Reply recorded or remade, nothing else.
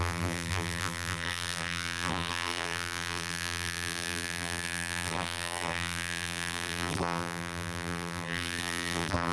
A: remade